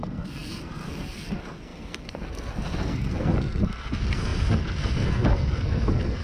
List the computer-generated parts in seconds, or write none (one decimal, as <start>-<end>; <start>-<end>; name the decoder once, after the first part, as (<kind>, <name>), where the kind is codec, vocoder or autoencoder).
0.0-6.2 (codec, SNAC)